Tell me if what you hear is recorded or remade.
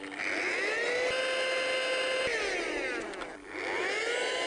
recorded